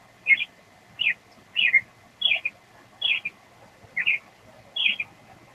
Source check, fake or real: real